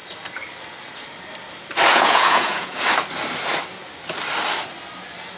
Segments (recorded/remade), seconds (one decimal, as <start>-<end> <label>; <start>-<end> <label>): 0.0-1.9 recorded; 1.9-2.8 remade; 2.8-5.4 recorded